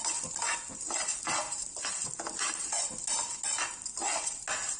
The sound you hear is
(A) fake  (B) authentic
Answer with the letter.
B